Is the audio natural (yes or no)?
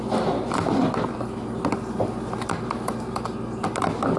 yes